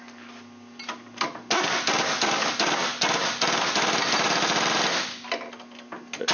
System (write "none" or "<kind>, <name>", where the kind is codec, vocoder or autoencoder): none